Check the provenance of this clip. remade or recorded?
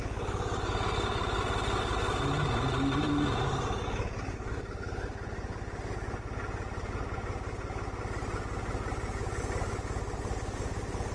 recorded